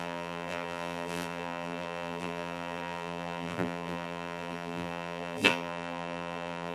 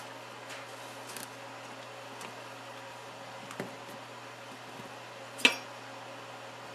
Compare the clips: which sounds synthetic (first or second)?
first